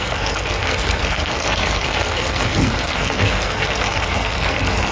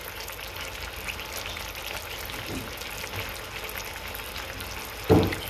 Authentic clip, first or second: second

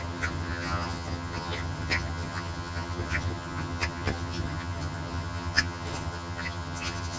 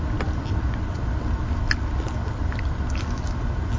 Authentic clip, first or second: second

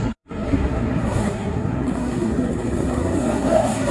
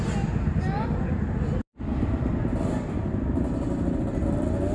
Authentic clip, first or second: second